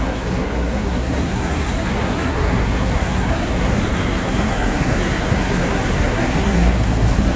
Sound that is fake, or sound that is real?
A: fake